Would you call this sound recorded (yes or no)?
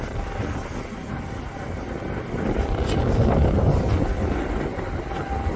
yes